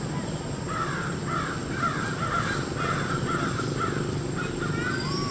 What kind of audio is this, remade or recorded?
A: recorded